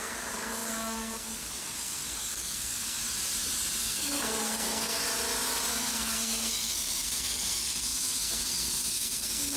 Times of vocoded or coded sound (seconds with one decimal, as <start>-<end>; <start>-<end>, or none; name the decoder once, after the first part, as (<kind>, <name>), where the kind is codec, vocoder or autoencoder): 0.0-3.0 (codec, SNAC); 3.8-5.0; 5.7-9.6